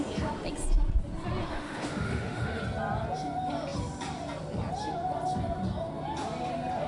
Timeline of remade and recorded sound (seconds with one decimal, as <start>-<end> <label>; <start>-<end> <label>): 0.0-1.4 recorded; 1.4-2.6 remade; 2.6-6.9 recorded